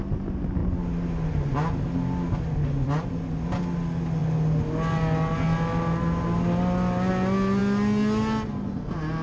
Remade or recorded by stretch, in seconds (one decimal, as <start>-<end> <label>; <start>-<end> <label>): 0.0-9.2 recorded